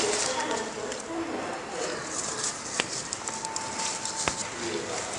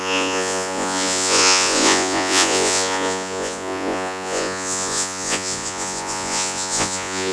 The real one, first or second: first